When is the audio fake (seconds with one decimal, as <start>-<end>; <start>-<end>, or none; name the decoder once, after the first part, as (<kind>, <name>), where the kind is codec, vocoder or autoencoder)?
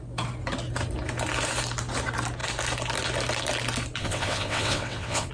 4.0-5.3 (vocoder, WaveNeXt)